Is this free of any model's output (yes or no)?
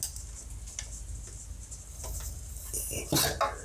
yes